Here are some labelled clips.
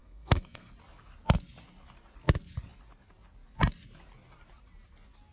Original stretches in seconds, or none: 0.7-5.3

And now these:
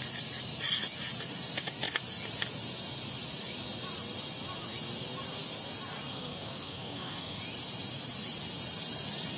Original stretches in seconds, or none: 0.0-6.1; 7.4-9.4